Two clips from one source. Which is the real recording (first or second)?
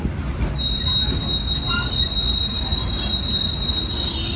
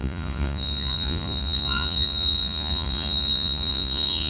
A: first